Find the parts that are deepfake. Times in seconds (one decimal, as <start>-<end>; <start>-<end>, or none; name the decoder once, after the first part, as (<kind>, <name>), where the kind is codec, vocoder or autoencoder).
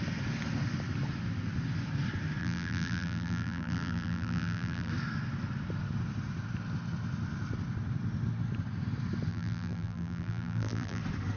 2.4-4.9 (vocoder, BigVGAN v2); 9.3-11.0